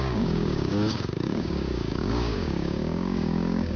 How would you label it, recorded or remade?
remade